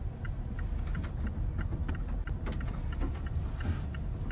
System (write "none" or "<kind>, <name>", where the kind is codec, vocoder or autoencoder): none